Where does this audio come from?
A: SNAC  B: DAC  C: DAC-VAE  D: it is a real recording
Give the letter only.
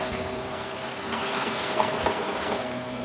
A